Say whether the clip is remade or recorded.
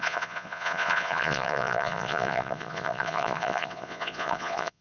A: remade